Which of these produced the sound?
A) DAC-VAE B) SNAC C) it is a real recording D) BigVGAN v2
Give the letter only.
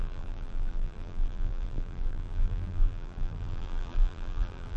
D